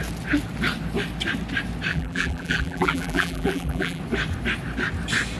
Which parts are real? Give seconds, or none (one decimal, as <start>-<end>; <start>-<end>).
0.0-1.9; 4.0-5.4